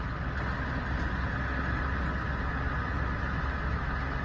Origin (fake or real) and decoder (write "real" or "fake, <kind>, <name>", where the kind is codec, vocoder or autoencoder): real